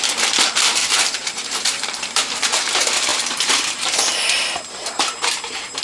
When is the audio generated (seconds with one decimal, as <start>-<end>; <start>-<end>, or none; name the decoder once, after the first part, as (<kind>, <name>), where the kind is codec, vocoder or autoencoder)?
0.8-2.7 (vocoder, BigVGAN v2); 3.1-5.8